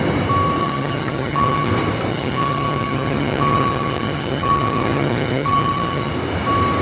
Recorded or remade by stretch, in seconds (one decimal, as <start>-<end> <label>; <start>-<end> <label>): 0.0-0.6 recorded; 0.6-1.7 remade; 1.7-2.1 recorded; 2.1-6.1 remade; 6.1-6.8 recorded